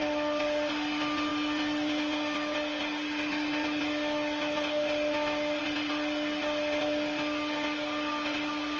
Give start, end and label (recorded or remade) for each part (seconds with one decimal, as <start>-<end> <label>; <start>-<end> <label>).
0.0-8.8 recorded

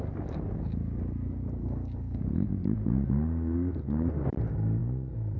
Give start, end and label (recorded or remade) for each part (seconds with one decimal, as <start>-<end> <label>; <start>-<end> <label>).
0.0-1.6 recorded; 1.6-2.2 remade; 2.2-5.4 recorded

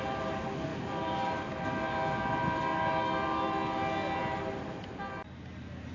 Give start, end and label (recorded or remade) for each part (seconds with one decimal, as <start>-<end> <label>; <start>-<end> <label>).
0.0-5.9 recorded

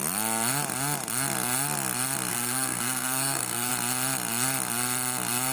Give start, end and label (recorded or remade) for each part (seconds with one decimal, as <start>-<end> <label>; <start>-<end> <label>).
0.0-2.3 recorded; 2.3-3.7 remade; 3.7-5.5 recorded

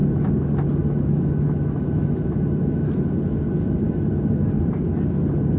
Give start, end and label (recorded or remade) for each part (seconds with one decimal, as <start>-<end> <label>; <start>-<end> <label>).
0.0-5.6 recorded

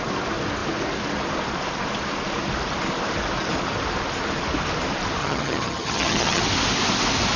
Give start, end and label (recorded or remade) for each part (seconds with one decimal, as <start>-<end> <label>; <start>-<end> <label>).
0.0-5.2 recorded; 5.2-6.4 remade; 6.4-7.4 recorded